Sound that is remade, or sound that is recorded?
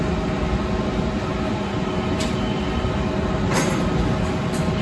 recorded